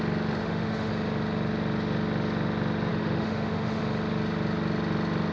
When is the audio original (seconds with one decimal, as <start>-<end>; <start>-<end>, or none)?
0.0-0.4; 0.9-2.9; 3.8-5.3